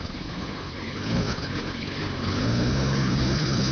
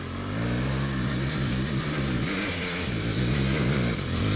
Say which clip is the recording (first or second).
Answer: second